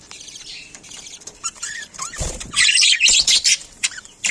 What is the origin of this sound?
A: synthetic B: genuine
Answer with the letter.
A